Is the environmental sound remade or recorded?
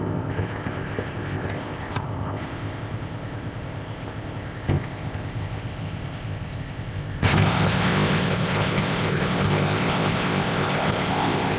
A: remade